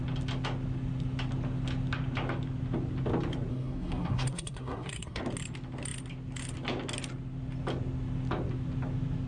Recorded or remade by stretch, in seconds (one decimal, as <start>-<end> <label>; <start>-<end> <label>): 0.0-3.5 recorded; 3.5-5.2 remade; 5.2-9.3 recorded